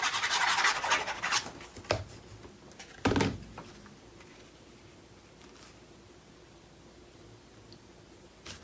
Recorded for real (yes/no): yes